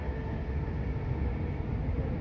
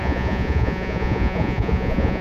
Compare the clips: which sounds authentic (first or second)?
first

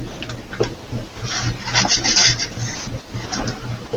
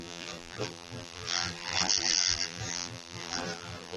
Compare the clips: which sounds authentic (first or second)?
first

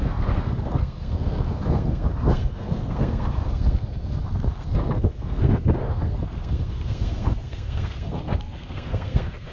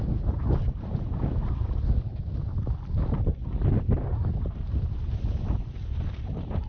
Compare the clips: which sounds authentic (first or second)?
second